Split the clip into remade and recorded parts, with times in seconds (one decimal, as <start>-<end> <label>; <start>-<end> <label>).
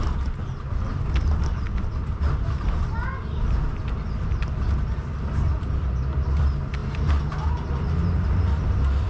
0.0-9.1 recorded